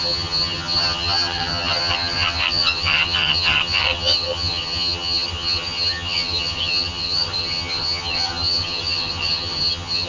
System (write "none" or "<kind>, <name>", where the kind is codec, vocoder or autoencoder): vocoder, HiFi-GAN